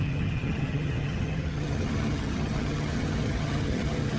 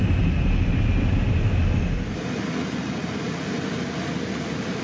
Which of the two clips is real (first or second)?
second